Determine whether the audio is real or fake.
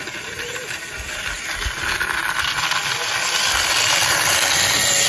real